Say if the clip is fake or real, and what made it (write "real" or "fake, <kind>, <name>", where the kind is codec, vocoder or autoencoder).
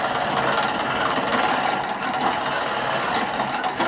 real